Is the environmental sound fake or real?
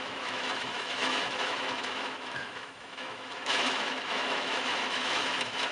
fake